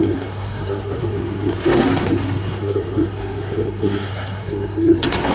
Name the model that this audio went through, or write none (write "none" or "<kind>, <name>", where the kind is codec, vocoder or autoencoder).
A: codec, SNAC